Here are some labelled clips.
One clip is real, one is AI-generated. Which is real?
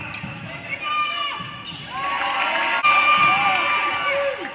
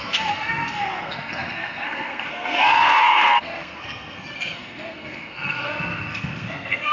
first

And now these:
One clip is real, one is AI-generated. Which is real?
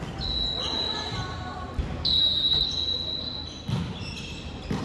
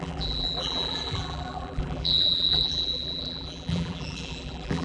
first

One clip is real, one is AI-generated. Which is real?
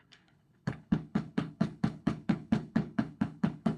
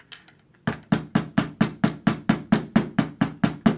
second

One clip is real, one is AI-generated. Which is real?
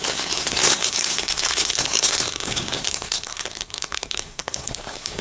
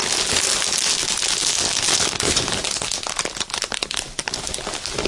second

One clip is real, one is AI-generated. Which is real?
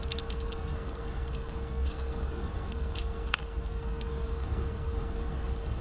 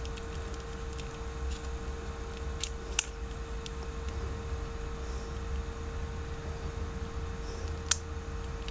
second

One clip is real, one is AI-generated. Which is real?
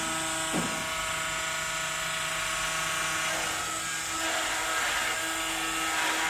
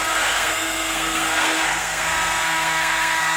first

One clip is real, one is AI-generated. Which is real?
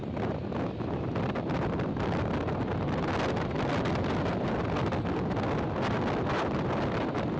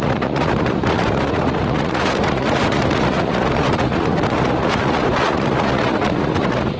first